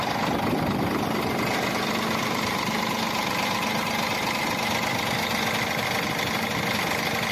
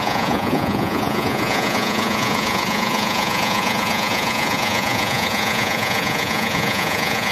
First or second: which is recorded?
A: first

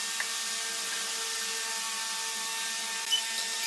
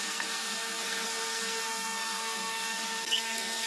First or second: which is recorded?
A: first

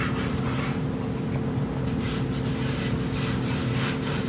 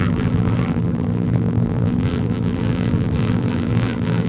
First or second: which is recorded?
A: first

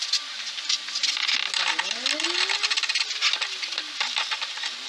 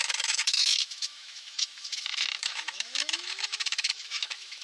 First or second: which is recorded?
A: first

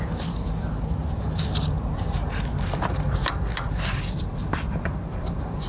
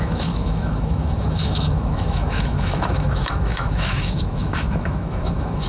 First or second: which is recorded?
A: first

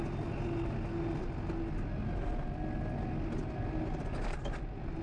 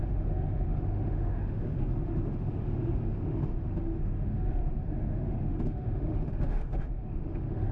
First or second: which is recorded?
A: first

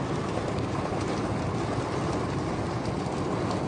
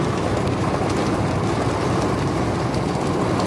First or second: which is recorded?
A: second